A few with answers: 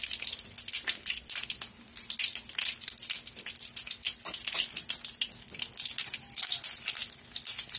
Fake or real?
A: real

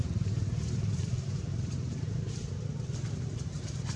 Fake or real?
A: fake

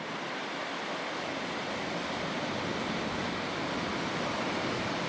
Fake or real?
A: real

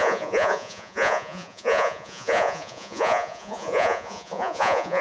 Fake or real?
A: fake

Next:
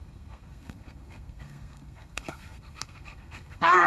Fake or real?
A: fake